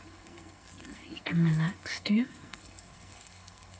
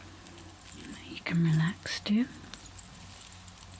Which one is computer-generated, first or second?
first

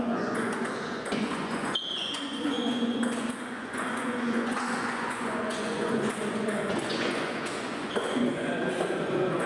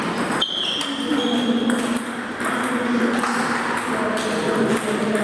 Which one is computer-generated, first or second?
first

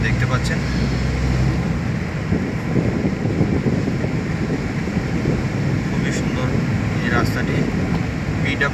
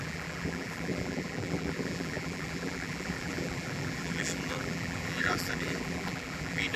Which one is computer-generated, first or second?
second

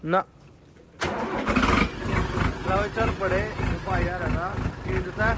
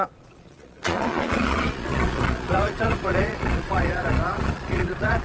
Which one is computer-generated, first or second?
second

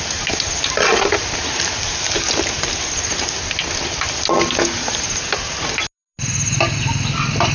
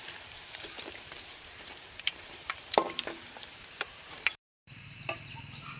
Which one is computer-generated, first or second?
second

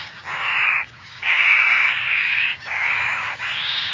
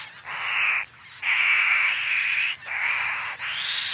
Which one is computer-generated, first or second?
first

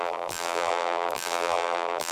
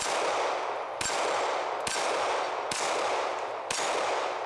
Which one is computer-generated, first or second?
first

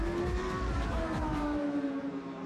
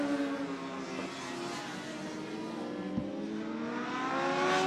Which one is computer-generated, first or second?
first